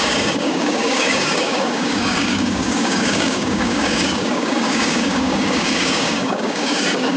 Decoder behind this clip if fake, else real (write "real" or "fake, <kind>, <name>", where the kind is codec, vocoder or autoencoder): fake, codec, DAC